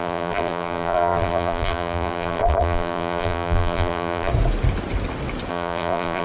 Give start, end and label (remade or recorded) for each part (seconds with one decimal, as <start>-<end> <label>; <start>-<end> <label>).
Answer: 0.0-4.3 remade; 4.3-5.5 recorded; 5.5-6.2 remade